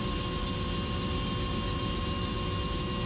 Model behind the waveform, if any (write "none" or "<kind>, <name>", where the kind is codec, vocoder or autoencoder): none